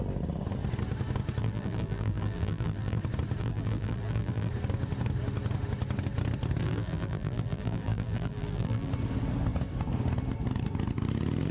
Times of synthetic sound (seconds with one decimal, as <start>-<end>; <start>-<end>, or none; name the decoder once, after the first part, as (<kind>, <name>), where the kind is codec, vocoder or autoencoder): 1.4-3.0 (vocoder, BigVGAN v2); 3.4-4.5; 6.6-8.9